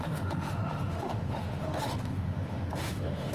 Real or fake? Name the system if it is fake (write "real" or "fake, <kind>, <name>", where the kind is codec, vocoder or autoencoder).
fake, autoencoder, DAC-VAE